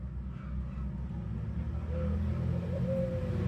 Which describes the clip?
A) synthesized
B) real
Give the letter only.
B